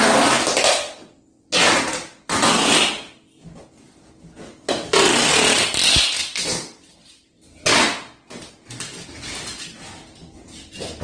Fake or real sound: real